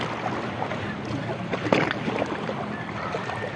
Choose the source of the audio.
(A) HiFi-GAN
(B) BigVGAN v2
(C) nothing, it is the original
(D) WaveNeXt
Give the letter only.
C